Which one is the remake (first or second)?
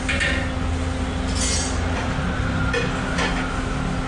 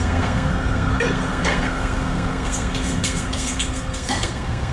second